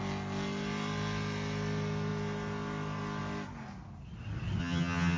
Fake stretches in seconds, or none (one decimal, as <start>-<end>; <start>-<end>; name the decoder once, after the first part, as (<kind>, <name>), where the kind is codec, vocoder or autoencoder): 4.6-5.2 (vocoder, HiFi-GAN)